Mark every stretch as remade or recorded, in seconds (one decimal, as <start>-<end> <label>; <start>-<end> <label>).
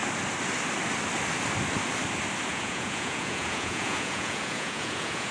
0.0-2.5 recorded; 2.5-5.3 remade